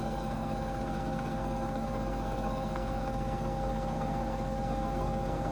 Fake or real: fake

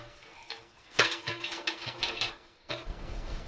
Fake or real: fake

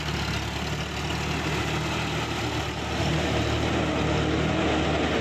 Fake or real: real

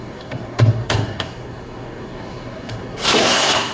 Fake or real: fake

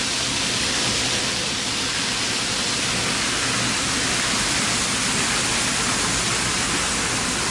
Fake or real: real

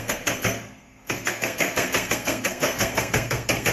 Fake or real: fake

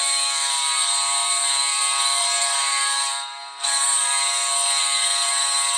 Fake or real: fake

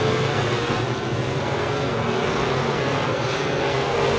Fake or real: fake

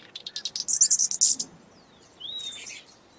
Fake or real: real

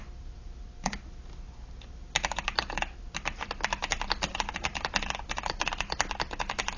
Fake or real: real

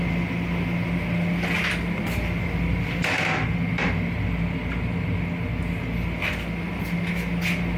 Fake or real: real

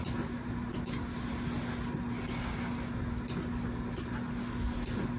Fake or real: real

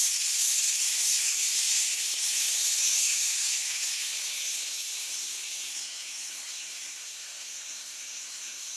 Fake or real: fake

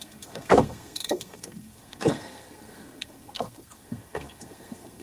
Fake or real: fake